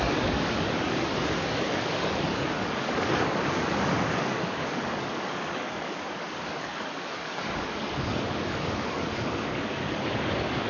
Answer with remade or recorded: remade